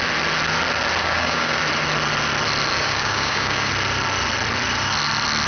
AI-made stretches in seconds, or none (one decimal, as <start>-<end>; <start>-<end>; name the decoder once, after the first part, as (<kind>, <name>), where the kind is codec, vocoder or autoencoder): 1.0-1.6 (codec, DAC); 2.7-3.7

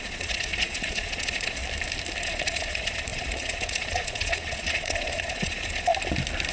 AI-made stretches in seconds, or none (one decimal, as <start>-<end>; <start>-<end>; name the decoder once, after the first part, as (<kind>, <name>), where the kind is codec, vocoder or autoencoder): 0.0-1.6 (vocoder, Vocos); 2.2-5.9

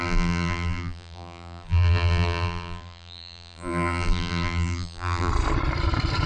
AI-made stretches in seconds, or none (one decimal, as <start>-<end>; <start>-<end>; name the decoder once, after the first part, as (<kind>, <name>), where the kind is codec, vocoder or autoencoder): 0.0-5.3 (vocoder, BigVGAN v2)

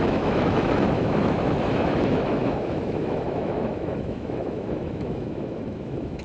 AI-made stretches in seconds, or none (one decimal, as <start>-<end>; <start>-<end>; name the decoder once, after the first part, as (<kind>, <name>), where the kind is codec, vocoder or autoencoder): 0.0-6.2 (autoencoder, DAC-VAE)